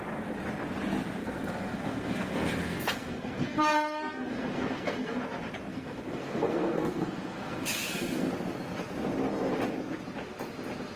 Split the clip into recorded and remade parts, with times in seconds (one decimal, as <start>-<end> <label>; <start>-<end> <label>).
0.0-1.2 recorded; 1.2-5.2 remade; 5.2-5.7 recorded; 5.7-8.3 remade; 8.3-11.0 recorded